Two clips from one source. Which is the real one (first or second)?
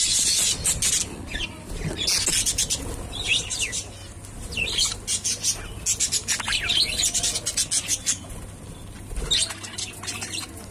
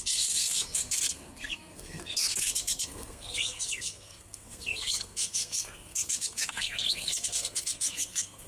first